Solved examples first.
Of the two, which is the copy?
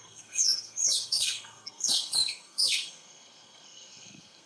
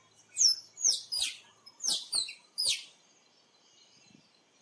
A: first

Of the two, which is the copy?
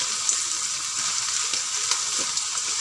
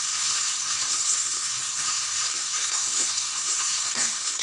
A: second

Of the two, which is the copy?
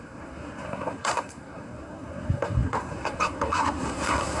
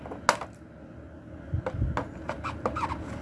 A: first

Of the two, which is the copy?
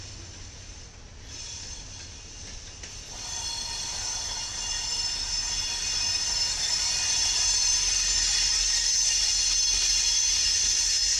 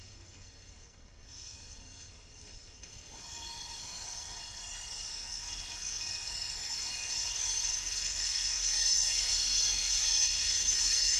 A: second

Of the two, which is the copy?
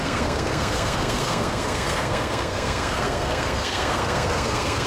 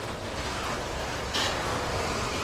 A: first